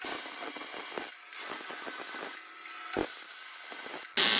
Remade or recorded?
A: recorded